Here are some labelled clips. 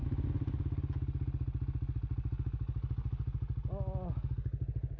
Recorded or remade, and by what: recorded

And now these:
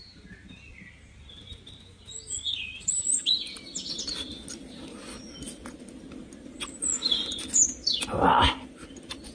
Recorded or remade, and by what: recorded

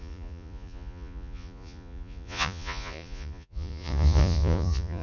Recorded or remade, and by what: remade, vocoder, Vocos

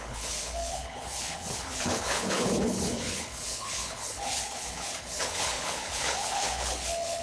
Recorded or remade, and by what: remade, codec, HILCodec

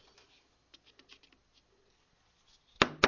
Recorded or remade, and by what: recorded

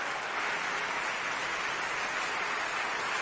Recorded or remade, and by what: recorded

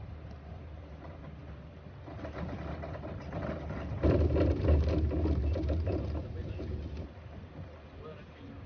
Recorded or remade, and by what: recorded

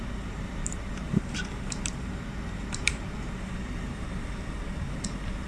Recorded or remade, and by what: remade, vocoder, BigVGAN v2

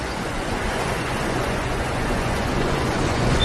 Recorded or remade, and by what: remade, vocoder, Vocos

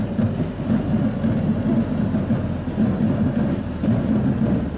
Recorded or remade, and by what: recorded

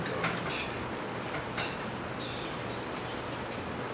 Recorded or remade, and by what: recorded